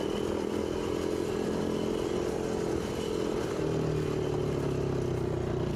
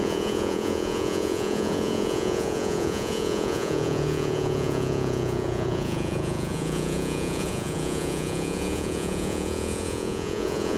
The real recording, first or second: first